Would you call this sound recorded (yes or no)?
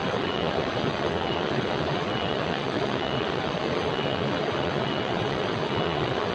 no